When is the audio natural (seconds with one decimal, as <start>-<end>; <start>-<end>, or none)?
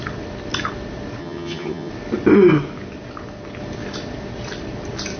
0.0-1.2; 1.9-5.2